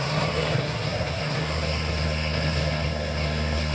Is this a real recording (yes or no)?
no